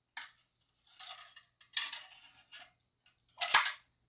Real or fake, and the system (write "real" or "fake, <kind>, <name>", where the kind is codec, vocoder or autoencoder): real